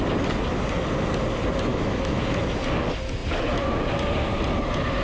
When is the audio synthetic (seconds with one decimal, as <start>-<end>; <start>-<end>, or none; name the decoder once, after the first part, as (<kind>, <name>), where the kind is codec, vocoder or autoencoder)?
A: 1.7-2.2 (autoencoder, DAC-VAE)